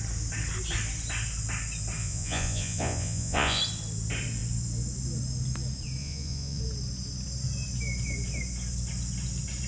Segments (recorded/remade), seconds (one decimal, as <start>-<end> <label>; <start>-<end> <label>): 0.0-2.0 recorded; 2.0-3.6 remade; 3.6-6.0 recorded; 6.0-6.6 remade; 6.6-9.7 recorded